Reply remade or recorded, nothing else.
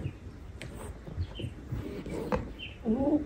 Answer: recorded